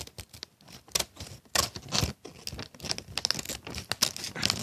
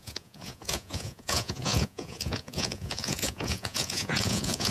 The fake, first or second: second